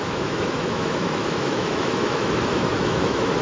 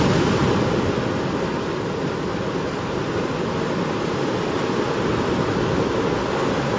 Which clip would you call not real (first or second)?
first